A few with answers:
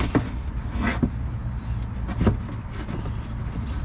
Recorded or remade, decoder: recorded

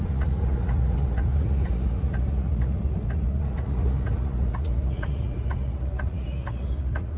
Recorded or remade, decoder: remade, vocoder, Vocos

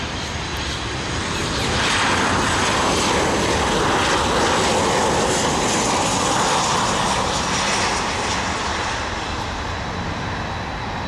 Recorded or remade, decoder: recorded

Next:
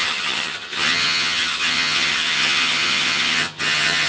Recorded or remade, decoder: remade, vocoder, HiFi-GAN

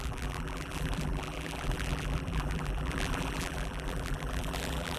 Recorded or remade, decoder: remade, vocoder, BigVGAN v2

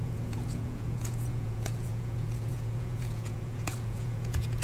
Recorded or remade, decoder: remade, vocoder, Vocos